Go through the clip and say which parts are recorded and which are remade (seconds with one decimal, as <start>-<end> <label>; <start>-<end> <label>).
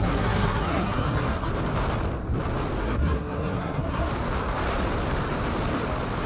0.0-1.5 remade; 1.5-2.8 recorded; 2.8-4.1 remade; 4.1-6.3 recorded